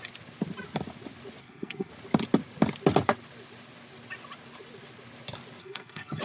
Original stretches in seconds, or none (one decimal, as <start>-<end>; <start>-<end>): 0.0-1.4; 1.9-5.6